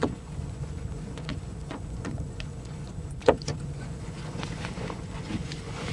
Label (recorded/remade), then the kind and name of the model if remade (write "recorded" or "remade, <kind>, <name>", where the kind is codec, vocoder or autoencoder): remade, vocoder, Vocos